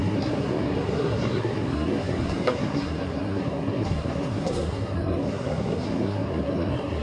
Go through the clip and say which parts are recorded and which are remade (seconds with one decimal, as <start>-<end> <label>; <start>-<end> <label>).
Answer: 0.0-7.0 remade